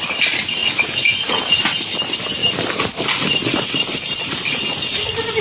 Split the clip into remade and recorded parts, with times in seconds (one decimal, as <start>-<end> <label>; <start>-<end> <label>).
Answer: 0.0-0.6 recorded; 0.6-1.4 remade; 1.4-5.4 recorded